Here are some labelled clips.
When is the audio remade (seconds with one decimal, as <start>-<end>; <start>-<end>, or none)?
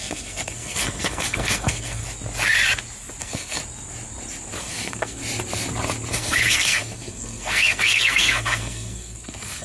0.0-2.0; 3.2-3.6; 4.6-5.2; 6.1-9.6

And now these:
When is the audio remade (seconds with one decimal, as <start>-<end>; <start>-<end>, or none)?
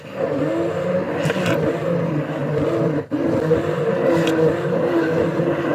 none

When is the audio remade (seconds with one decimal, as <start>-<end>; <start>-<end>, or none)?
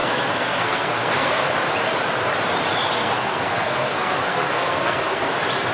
0.0-1.5; 3.0-5.3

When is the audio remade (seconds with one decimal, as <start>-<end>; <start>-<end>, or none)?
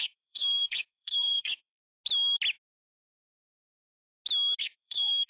0.0-1.8; 3.1-3.6; 4.6-5.3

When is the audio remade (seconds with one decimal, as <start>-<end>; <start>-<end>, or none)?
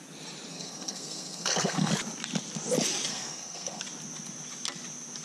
0.5-1.9; 3.1-3.8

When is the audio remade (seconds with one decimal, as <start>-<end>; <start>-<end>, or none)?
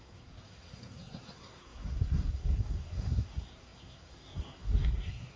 0.0-5.4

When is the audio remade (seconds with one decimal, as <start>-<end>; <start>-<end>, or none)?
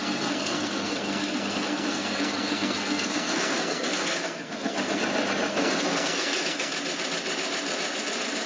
0.0-5.0; 5.5-6.7